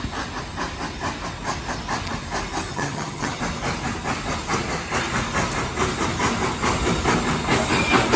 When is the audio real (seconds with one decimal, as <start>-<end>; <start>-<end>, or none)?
0.0-2.7; 3.4-8.2